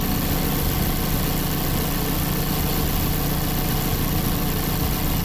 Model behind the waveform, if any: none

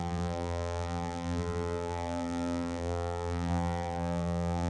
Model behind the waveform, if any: vocoder, BigVGAN v2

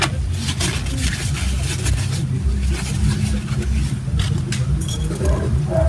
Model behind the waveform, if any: none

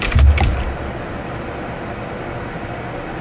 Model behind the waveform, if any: none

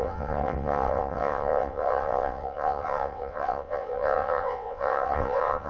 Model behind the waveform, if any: vocoder, WaveNeXt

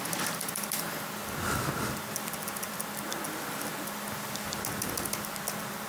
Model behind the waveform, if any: none